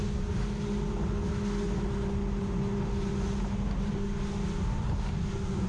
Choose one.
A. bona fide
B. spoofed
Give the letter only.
A